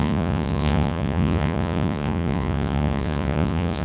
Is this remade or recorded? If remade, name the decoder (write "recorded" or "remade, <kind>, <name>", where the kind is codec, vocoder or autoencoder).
remade, vocoder, Vocos